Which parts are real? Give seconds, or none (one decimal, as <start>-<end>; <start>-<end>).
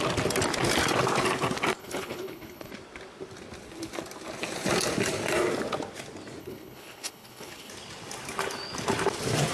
0.0-1.8; 2.7-6.4; 7.7-9.5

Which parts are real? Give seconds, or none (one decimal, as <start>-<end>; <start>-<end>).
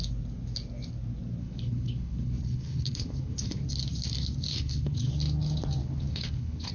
0.0-1.4; 3.6-4.5; 5.1-5.8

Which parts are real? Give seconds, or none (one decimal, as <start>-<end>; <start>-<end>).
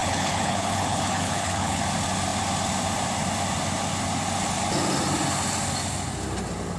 1.8-6.8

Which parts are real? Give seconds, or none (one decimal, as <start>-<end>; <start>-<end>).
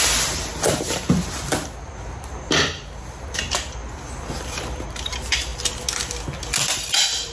0.0-7.3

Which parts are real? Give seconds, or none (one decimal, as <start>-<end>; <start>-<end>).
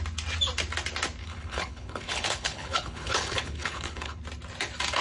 0.0-1.2; 4.2-5.0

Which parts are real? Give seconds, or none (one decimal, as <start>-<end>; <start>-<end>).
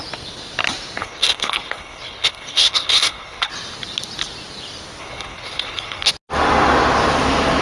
0.0-1.0; 3.5-5.0; 6.1-7.6